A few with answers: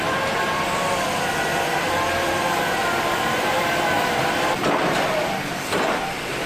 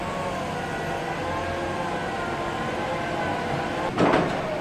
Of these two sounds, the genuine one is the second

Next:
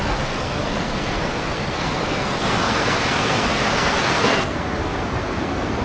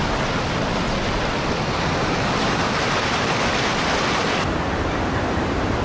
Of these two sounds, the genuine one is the second